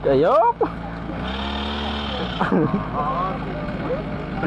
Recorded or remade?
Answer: recorded